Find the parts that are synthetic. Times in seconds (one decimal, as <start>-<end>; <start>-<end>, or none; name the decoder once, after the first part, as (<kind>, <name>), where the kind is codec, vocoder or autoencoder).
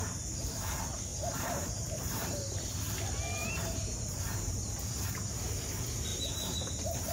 1.1-2.8 (vocoder, BigVGAN v2); 3.4-5.5; 6.1-7.1